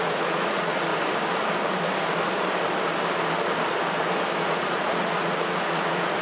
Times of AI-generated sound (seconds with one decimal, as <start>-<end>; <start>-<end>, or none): 0.0-0.9; 4.4-6.2